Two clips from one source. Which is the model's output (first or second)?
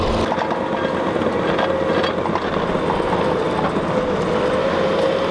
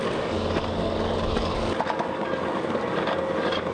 second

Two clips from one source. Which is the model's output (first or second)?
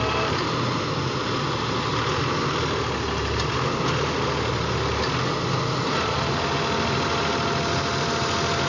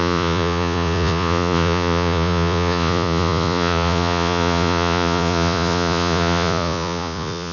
second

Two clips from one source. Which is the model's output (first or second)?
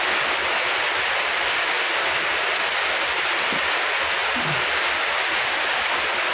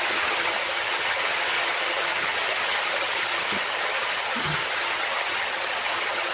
second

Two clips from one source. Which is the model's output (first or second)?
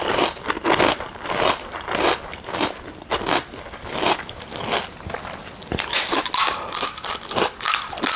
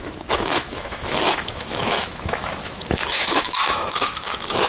second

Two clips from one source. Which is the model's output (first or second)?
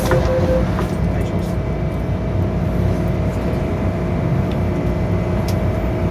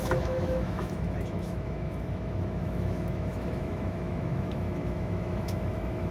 second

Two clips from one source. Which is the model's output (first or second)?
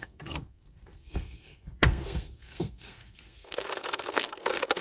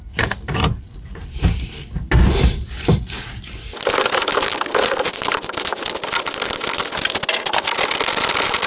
first